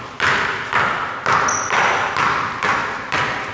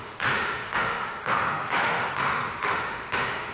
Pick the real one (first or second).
first